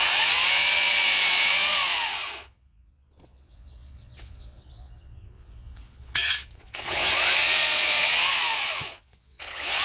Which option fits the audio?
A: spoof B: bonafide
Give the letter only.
A